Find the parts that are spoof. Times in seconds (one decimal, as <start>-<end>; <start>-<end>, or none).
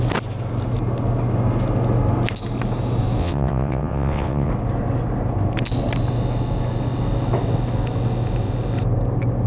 3.2-4.5